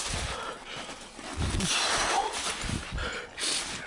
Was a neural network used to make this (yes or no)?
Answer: no